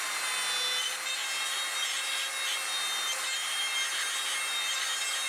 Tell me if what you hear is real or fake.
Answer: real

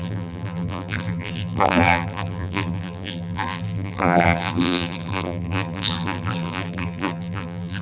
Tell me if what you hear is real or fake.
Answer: fake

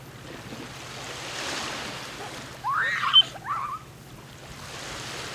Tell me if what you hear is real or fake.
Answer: real